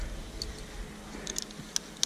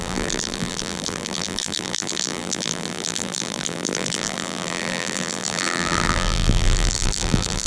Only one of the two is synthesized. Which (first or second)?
second